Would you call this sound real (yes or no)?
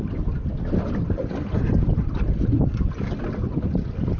yes